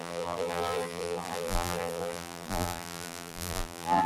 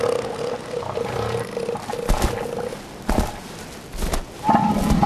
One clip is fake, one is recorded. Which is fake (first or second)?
first